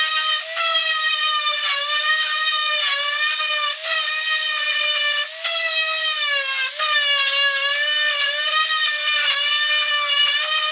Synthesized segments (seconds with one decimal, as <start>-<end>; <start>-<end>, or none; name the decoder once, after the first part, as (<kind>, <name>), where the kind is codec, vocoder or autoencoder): 0.7-2.1 (vocoder, BigVGAN v2)